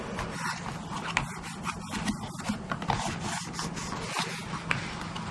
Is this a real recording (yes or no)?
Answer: yes